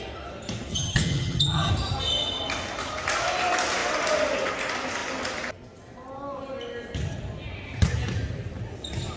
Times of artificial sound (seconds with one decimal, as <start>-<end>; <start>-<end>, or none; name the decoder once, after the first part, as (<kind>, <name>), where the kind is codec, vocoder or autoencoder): 0.7-1.7 (vocoder, HiFi-GAN)